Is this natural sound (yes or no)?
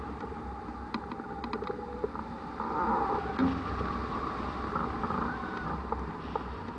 yes